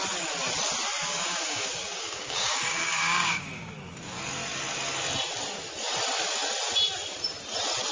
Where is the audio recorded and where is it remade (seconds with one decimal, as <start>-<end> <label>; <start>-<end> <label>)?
0.0-1.0 recorded; 1.0-3.7 remade; 3.7-7.9 recorded